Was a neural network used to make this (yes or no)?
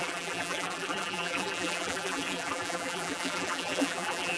yes